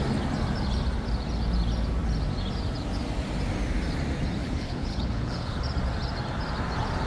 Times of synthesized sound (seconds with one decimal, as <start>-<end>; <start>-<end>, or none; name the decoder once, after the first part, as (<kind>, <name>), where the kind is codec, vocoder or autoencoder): 4.4-5.6 (codec, HILCodec)